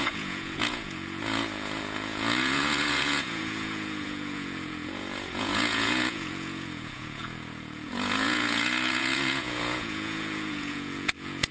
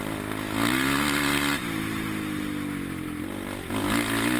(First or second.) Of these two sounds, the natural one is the second